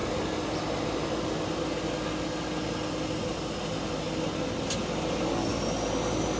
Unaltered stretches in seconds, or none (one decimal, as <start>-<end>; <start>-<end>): 0.0-6.4